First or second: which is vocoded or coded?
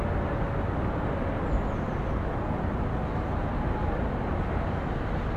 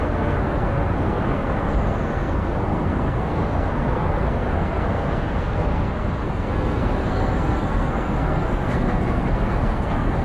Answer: second